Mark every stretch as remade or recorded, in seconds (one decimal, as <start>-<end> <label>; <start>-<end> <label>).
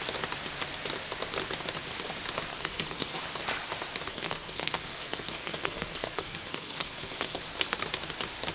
0.0-2.5 recorded; 2.5-3.2 remade; 3.2-4.1 recorded; 4.1-7.4 remade; 7.4-8.5 recorded